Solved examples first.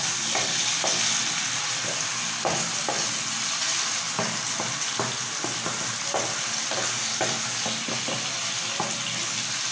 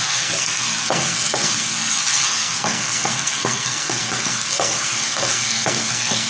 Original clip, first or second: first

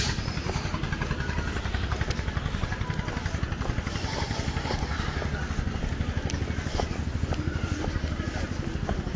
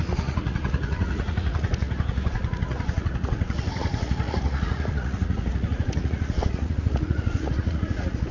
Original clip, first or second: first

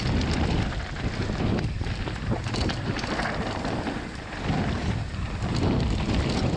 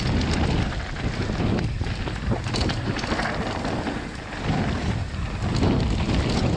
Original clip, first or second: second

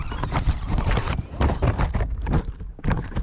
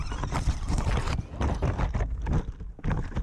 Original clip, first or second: second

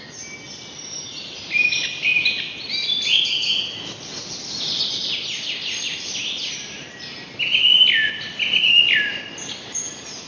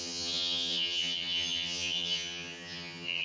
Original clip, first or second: first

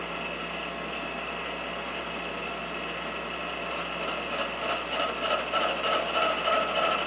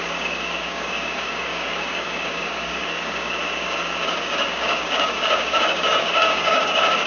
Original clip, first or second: first